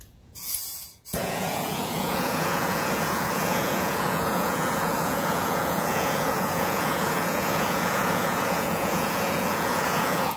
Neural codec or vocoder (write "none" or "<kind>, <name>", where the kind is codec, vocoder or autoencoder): vocoder, Vocos